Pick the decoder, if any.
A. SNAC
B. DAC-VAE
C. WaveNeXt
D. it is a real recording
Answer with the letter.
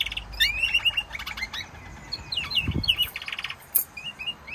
D